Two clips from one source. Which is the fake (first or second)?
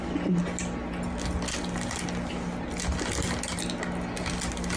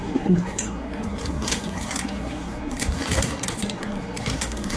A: second